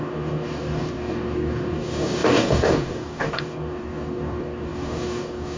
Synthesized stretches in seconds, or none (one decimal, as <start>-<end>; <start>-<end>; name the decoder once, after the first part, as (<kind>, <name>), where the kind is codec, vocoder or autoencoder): 0.0-5.6 (codec, DAC)